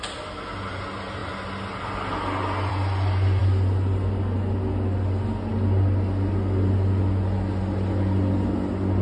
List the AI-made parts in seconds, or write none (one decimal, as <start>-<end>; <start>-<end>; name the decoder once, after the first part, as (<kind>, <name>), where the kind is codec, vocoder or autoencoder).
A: none